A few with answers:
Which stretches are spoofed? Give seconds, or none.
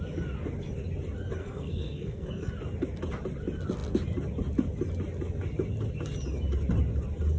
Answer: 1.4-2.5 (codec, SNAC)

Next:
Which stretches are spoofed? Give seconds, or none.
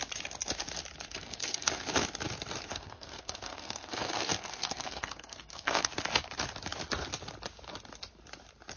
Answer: 1.1-1.9 (codec, SNAC); 2.7-5.9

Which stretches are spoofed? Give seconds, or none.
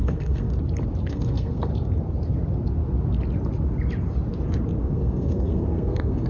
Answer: 0.0-0.5 (codec, SNAC); 1.1-1.7; 4.8-6.3